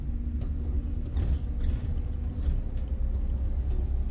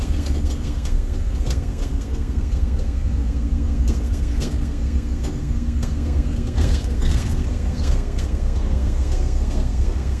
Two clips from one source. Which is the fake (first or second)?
second